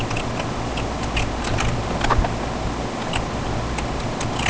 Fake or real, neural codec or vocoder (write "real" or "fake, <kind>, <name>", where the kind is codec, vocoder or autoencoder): real